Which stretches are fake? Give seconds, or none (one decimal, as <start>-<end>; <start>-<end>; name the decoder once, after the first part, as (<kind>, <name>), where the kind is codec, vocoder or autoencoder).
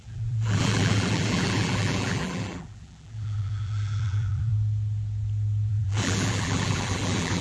0.0-4.5 (vocoder, BigVGAN v2); 5.7-7.4